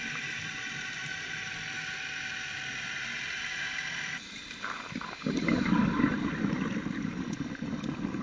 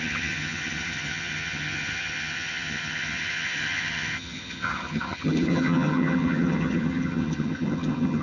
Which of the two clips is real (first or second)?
first